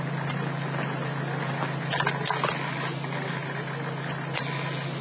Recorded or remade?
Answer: recorded